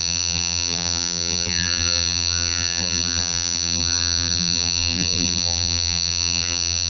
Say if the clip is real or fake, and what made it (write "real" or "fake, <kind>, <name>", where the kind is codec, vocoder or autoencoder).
fake, vocoder, BigVGAN v2